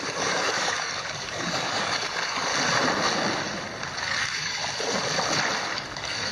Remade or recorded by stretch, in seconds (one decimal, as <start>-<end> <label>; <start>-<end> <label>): 0.0-2.5 remade; 2.5-4.0 recorded; 4.0-4.6 remade; 4.6-5.7 recorded; 5.7-6.3 remade